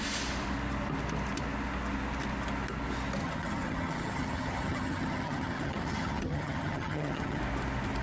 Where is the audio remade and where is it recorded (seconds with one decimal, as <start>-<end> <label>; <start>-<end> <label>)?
0.0-3.2 recorded; 3.2-7.4 remade; 7.4-8.0 recorded

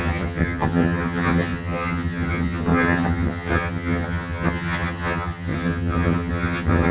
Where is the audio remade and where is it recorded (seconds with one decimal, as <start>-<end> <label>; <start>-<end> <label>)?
0.0-6.9 remade

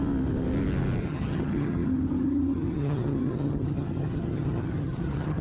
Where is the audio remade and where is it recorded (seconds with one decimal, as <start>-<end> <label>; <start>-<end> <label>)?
0.0-1.0 recorded; 1.0-5.4 remade

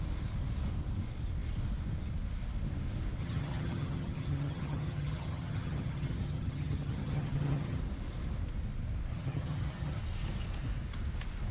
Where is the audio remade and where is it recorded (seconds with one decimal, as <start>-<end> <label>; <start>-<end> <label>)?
0.0-3.2 recorded; 3.2-7.8 remade; 7.8-9.1 recorded; 9.1-10.0 remade; 10.0-11.5 recorded

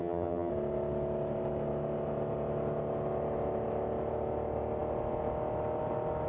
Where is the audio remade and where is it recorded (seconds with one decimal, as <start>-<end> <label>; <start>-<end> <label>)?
0.0-0.5 remade; 0.5-6.3 recorded

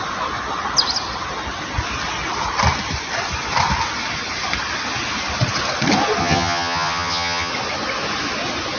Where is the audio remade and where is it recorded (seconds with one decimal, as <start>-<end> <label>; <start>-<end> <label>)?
0.0-6.2 recorded; 6.2-7.5 remade; 7.5-8.8 recorded

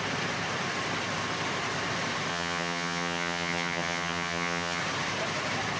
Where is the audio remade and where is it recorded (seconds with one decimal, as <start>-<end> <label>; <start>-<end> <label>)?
0.0-2.3 recorded; 2.3-4.8 remade; 4.8-5.8 recorded

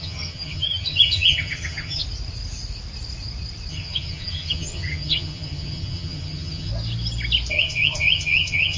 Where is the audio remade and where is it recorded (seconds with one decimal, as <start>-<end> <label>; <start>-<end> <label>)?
0.0-2.0 remade; 2.0-3.7 recorded; 3.7-6.7 remade; 6.7-7.5 recorded; 7.5-8.8 remade